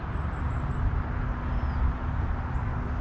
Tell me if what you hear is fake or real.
real